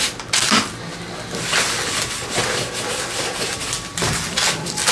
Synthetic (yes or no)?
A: no